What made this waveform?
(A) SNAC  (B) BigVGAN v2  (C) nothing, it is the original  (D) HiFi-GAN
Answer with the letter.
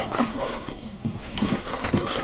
A